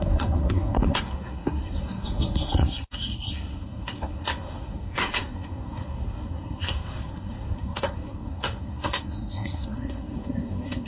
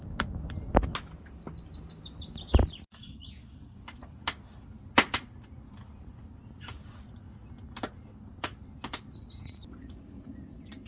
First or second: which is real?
second